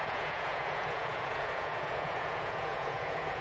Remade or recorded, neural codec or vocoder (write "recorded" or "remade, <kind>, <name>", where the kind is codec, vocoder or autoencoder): remade, vocoder, Vocos